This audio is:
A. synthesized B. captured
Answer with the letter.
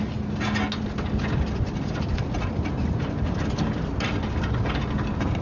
B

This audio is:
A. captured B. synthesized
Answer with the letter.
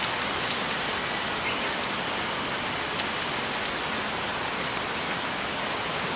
A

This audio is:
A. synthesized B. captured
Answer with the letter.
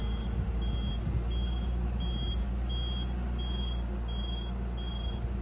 B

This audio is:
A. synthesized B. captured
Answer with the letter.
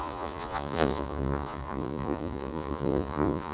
A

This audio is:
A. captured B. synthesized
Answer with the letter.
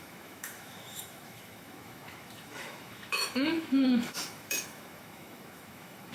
B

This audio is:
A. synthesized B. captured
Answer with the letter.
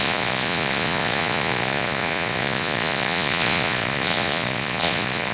A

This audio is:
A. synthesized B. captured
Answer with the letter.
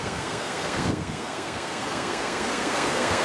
A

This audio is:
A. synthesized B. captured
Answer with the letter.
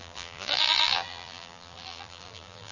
A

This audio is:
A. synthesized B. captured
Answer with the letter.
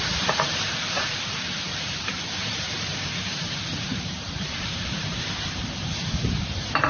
A